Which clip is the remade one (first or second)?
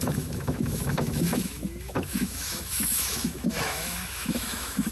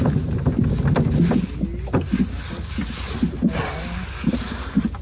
first